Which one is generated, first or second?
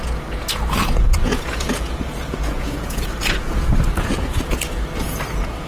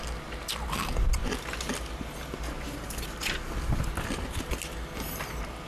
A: first